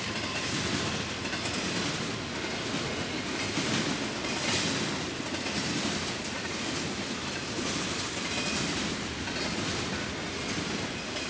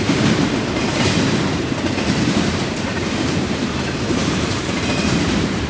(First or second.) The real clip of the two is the first